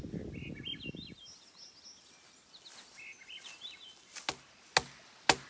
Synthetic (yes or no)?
no